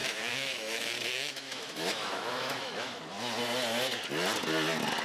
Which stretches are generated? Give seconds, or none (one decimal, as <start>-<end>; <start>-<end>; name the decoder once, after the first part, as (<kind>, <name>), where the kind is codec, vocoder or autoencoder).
0.0-3.0 (autoencoder, DAC-VAE)